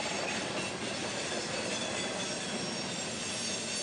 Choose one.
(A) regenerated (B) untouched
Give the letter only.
B